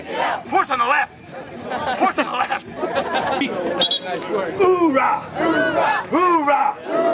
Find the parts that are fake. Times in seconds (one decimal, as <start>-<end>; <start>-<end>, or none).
none